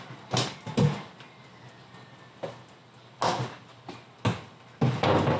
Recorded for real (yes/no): yes